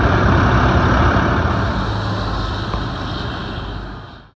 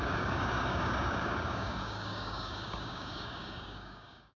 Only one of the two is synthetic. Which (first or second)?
second